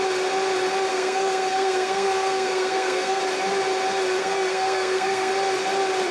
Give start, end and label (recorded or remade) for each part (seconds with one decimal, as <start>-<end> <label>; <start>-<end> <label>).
0.0-0.9 recorded; 0.9-3.2 remade; 3.2-4.2 recorded; 4.2-5.3 remade; 5.3-6.1 recorded